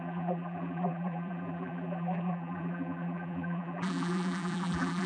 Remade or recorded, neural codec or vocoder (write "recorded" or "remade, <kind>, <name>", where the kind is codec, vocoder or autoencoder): remade, vocoder, BigVGAN v2